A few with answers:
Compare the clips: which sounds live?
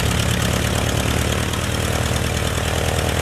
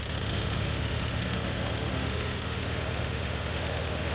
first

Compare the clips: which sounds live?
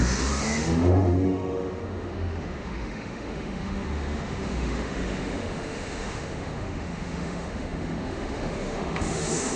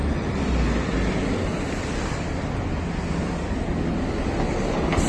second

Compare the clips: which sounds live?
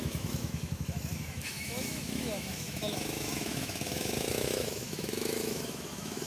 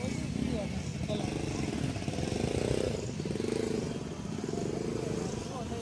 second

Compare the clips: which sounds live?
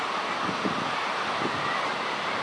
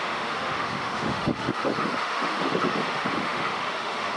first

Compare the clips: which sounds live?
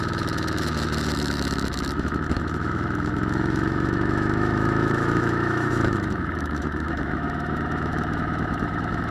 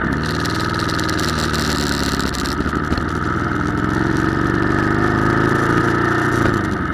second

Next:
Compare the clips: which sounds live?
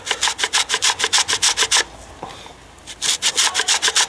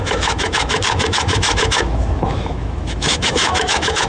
first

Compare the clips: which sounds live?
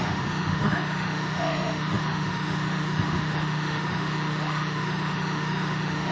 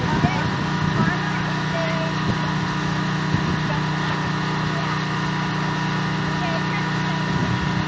second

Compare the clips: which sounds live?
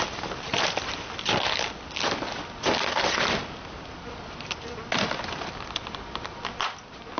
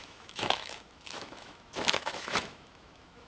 first